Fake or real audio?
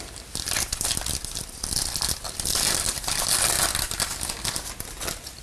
real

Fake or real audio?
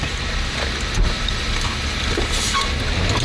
fake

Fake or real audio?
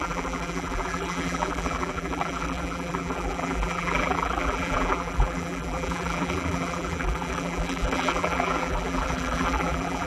fake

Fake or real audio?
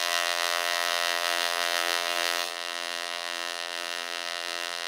fake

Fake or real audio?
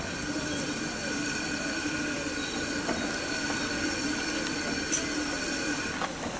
fake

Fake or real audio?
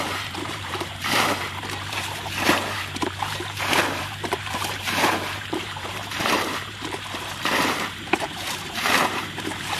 fake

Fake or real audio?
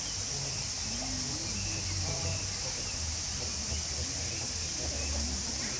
real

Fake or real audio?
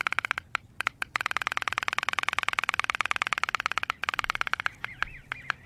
real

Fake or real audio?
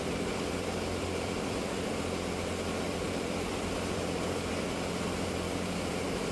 fake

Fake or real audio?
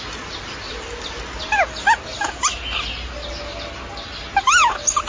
real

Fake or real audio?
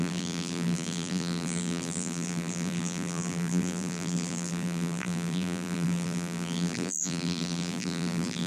fake